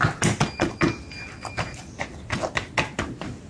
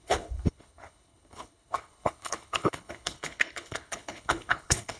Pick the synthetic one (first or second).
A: second